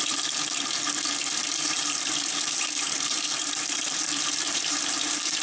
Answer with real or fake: fake